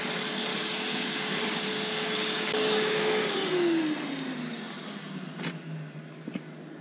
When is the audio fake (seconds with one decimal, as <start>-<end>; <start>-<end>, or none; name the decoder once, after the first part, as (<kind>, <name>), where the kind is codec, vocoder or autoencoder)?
0.5-3.8 (codec, DAC)